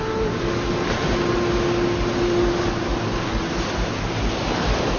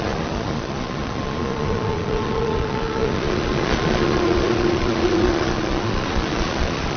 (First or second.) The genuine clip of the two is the first